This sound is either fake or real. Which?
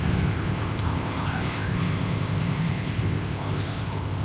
fake